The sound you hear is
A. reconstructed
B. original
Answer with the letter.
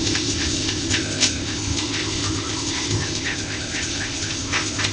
A